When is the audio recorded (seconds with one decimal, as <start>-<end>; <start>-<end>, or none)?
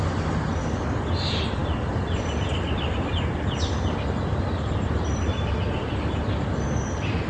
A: 0.0-7.3